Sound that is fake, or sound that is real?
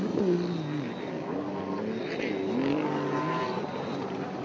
real